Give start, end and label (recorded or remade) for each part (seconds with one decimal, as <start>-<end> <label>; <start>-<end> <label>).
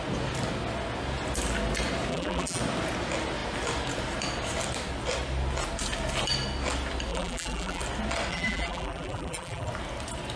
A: 0.0-2.1 recorded; 2.1-2.6 remade; 2.6-7.1 recorded; 7.1-7.8 remade; 7.8-8.3 recorded; 8.3-9.7 remade; 9.7-10.4 recorded